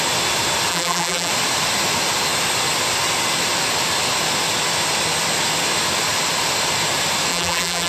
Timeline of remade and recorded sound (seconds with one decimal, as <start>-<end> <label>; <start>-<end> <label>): 0.0-0.7 recorded; 0.7-1.3 remade; 1.3-7.3 recorded; 7.3-7.9 remade